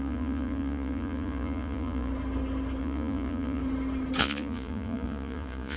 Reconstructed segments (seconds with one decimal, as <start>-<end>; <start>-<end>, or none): 0.0-2.1; 2.8-3.6; 4.2-5.8